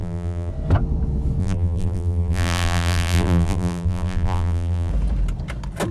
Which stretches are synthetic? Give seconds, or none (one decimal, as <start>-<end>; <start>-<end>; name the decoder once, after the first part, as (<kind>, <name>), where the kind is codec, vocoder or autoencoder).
0.0-0.5 (vocoder, BigVGAN v2); 1.4-4.9